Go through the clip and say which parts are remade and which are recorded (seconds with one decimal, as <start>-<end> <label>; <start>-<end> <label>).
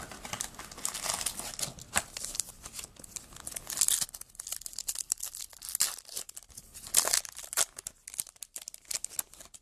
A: 0.0-9.6 recorded